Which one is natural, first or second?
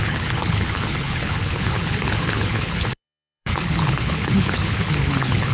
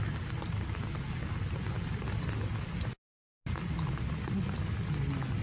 second